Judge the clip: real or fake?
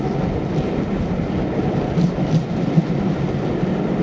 real